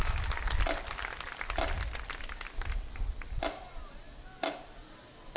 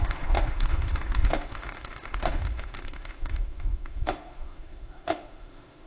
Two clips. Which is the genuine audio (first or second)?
first